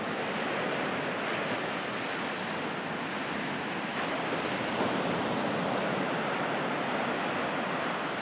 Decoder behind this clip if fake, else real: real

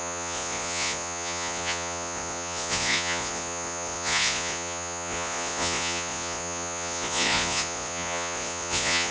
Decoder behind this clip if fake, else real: fake, vocoder, Vocos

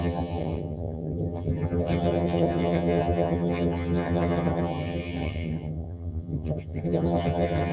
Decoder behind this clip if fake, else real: fake, vocoder, HiFi-GAN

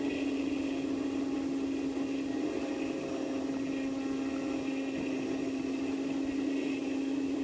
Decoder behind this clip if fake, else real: real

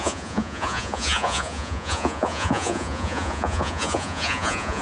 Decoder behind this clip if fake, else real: fake, vocoder, Vocos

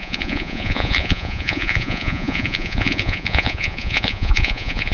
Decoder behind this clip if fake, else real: fake, vocoder, Vocos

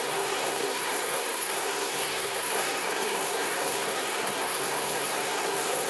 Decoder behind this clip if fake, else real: fake, codec, SNAC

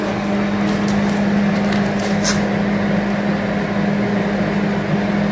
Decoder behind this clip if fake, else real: real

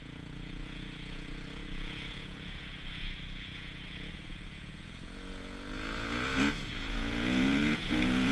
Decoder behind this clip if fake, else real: fake, vocoder, Vocos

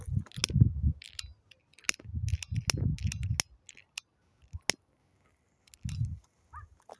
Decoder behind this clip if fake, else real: real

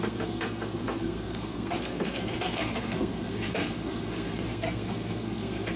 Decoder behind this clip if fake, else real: fake, codec, SNAC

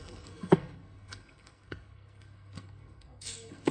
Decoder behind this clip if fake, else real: fake, codec, SNAC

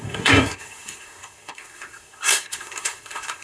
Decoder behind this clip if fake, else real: fake, codec, SNAC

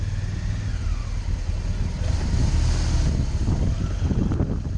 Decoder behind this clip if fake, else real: real